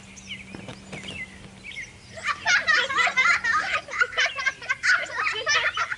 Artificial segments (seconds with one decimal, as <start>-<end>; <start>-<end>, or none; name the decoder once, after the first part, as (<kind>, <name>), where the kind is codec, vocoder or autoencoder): none